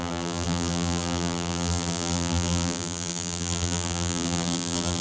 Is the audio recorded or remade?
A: remade